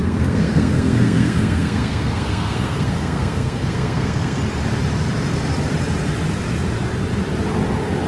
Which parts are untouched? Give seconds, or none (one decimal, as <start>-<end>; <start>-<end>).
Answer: 4.4-8.1